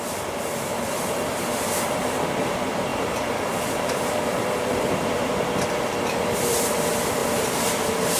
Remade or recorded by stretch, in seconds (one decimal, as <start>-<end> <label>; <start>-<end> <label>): 0.0-8.2 remade